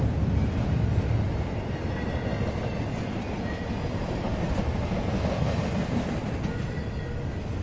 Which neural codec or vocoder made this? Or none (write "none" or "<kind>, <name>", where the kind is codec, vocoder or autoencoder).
none